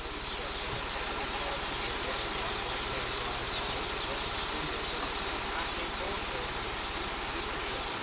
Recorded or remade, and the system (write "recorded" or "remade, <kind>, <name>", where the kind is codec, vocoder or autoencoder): recorded